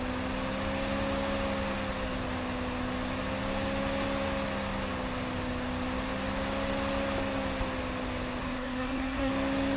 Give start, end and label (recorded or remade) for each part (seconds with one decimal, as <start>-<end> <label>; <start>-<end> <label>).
0.0-8.4 recorded; 8.4-9.3 remade; 9.3-9.8 recorded